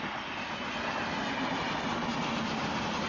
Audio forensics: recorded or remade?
recorded